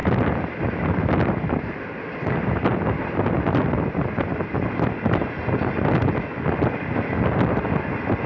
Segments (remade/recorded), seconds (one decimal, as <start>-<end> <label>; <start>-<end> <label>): 0.0-8.3 recorded